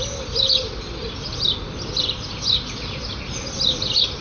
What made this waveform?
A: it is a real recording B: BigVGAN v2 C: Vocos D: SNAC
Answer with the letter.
A